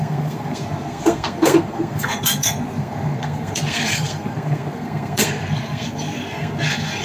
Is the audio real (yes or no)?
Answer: no